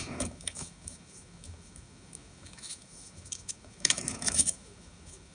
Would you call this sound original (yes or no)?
no